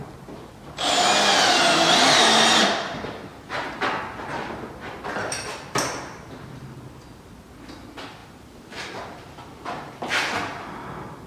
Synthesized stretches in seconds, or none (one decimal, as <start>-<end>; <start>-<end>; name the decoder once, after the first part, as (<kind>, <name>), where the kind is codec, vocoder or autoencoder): 3.3-4.0 (vocoder, BigVGAN v2); 5.2-7.3; 8.2-9.9